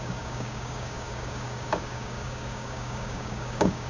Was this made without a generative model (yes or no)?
no